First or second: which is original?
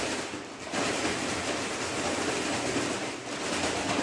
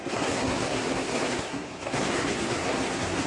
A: first